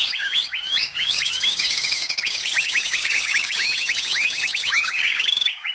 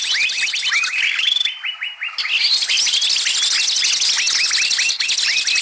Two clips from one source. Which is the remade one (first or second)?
first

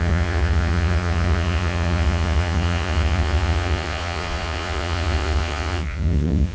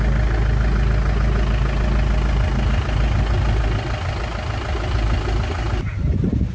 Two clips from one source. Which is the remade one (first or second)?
first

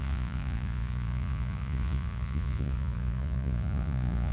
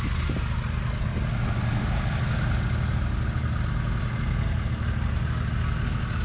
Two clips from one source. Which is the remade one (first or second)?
first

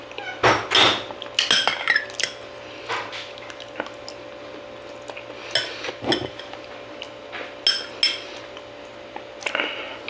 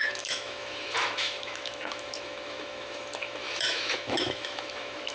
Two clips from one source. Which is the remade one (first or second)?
second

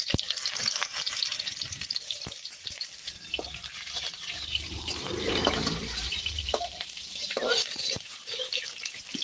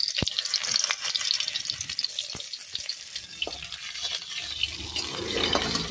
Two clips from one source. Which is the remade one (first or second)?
first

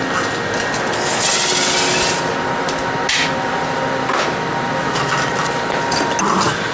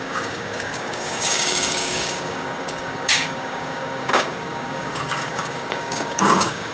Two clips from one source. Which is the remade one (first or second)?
second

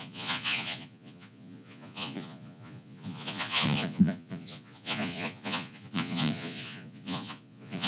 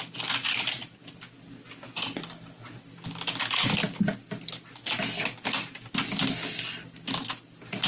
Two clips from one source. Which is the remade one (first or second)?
first